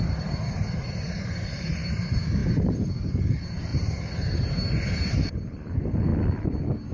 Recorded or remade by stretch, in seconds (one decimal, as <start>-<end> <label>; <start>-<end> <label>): 0.0-6.1 remade; 6.1-6.9 recorded